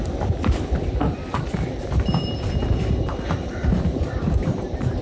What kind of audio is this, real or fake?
real